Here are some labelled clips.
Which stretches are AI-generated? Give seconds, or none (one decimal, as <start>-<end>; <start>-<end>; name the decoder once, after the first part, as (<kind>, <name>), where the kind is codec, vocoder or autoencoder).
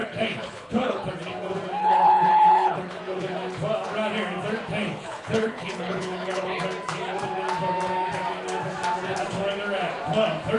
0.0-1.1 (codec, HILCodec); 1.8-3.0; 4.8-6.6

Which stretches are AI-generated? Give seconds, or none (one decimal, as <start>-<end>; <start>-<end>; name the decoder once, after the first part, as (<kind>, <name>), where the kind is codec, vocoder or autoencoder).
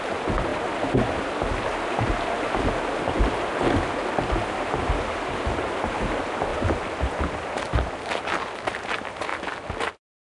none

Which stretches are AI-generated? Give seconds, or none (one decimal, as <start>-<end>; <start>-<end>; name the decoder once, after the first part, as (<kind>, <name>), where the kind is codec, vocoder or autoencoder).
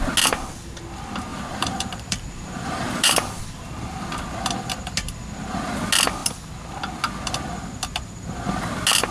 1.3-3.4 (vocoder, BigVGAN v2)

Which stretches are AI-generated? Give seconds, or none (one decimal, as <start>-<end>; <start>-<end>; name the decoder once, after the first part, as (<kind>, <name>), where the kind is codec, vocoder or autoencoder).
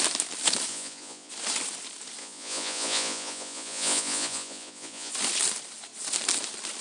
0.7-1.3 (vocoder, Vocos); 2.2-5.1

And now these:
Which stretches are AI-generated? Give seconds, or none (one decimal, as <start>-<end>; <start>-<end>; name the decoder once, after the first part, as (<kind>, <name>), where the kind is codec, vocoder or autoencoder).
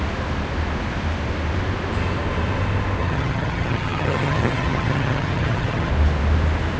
3.0-5.9 (vocoder, HiFi-GAN)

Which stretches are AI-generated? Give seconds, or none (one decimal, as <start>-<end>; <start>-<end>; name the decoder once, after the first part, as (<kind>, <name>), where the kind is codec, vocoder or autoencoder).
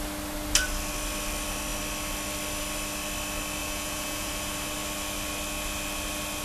3.6-4.3 (vocoder, Vocos)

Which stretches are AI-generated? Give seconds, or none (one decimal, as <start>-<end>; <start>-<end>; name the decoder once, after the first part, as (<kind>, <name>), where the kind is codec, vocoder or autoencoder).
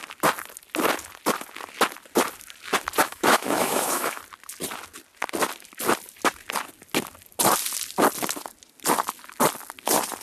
3.0-4.2 (autoencoder, DAC-VAE)